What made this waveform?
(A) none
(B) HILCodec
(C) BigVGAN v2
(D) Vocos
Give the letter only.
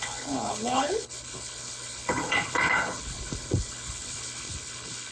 B